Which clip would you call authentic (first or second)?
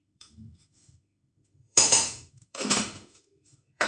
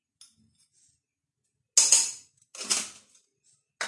second